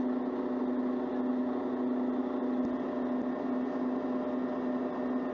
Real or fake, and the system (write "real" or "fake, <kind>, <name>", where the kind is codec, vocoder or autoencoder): real